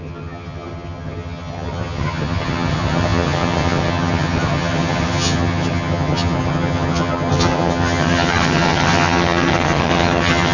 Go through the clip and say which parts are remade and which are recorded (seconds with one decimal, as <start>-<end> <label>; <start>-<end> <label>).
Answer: 0.0-10.5 remade